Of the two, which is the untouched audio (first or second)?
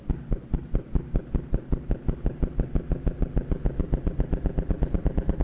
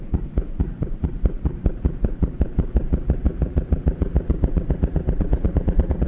first